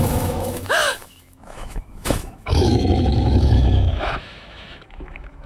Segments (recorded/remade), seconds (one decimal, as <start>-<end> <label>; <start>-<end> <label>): 0.0-5.5 remade